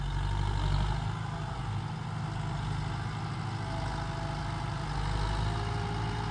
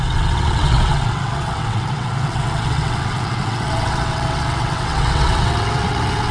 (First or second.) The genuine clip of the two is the first